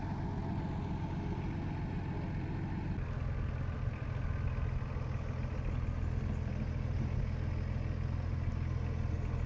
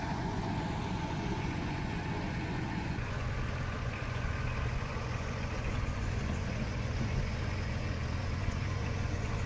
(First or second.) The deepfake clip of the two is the second